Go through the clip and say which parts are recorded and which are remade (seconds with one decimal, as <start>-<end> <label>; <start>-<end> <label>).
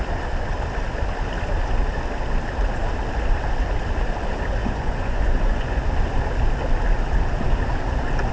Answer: 0.0-4.6 recorded; 4.6-5.8 remade; 5.8-8.3 recorded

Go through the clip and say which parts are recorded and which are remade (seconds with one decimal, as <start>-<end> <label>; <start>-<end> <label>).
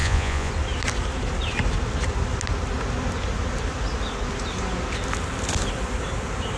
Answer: 0.0-0.5 remade; 0.5-6.6 recorded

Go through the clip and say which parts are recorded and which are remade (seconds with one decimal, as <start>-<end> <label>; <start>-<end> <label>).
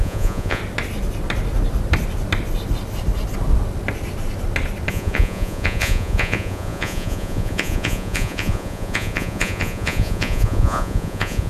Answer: 0.0-0.6 remade; 0.6-4.9 recorded; 4.9-11.5 remade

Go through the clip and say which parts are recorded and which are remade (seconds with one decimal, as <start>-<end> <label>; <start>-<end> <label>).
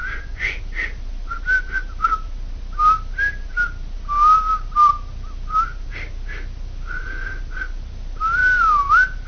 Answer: 0.0-0.6 remade; 0.6-9.3 recorded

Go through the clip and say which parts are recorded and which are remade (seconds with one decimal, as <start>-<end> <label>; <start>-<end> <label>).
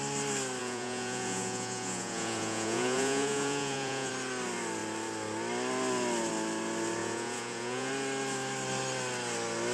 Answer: 0.0-0.6 recorded; 0.6-4.1 remade; 4.1-7.0 recorded; 7.0-7.9 remade; 7.9-9.7 recorded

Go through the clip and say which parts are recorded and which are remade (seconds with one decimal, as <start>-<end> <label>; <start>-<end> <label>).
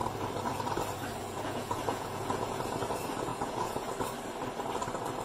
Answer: 0.0-1.2 recorded; 1.2-2.6 remade; 2.6-3.3 recorded; 3.3-3.9 remade; 3.9-5.2 recorded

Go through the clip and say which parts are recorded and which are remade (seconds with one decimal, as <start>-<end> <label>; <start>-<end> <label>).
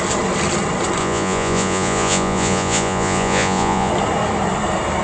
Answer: 0.0-1.0 recorded; 1.0-3.9 remade; 3.9-5.0 recorded